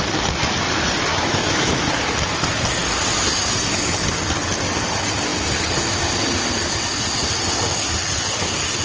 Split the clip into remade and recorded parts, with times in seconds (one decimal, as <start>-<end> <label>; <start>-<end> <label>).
0.0-1.1 recorded; 1.1-1.7 remade; 1.7-8.8 recorded